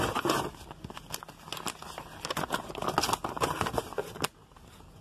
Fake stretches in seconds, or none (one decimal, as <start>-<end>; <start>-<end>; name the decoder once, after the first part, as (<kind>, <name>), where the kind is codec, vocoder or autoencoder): none